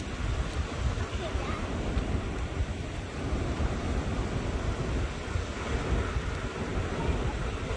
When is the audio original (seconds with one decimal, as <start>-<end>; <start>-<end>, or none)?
0.0-7.8